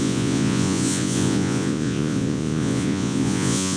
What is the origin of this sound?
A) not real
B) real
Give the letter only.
A